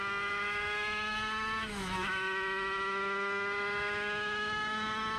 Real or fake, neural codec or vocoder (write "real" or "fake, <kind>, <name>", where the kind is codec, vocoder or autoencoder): fake, autoencoder, DAC-VAE